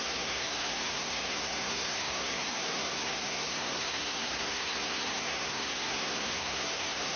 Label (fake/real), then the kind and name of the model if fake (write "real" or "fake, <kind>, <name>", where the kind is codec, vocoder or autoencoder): fake, codec, SNAC